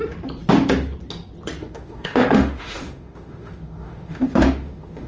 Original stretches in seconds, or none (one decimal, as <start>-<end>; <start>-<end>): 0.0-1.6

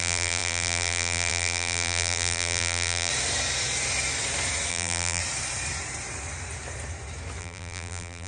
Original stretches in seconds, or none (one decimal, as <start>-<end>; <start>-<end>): 3.1-4.7; 5.2-7.4

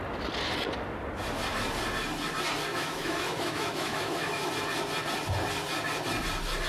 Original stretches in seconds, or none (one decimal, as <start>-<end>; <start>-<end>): 0.0-2.7; 4.5-6.7

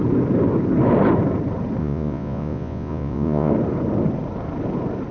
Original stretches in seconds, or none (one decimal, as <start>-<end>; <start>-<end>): 0.0-1.8; 3.5-5.1

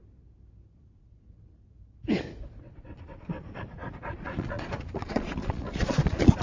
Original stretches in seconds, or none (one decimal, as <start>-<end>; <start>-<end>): 0.0-2.6

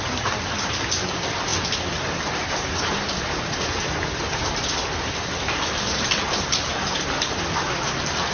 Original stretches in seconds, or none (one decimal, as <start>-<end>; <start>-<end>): 1.5-5.1

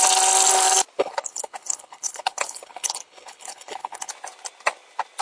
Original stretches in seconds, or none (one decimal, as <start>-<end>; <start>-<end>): 0.0-1.0; 4.1-5.2